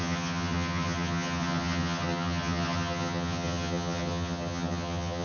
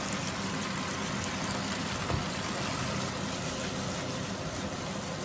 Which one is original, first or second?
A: second